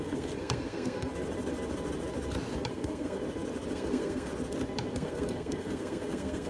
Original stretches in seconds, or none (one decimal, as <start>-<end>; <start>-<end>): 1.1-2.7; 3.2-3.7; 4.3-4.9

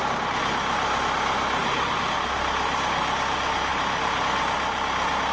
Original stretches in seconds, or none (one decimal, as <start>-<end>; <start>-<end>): 1.0-1.6; 2.4-3.7; 4.2-5.3

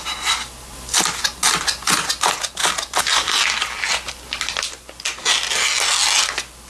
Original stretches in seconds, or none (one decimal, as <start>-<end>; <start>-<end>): 0.0-6.7

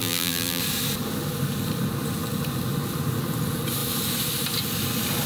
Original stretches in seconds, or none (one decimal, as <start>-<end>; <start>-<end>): 0.6-5.3

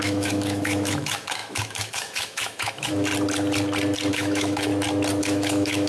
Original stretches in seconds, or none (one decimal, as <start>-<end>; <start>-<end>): 3.1-4.1; 4.7-5.2

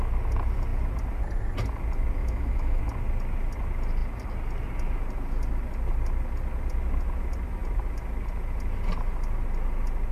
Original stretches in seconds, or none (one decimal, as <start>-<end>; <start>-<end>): 0.0-2.2; 2.8-10.1